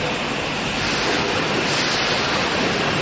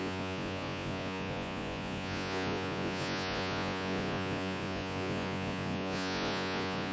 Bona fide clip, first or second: first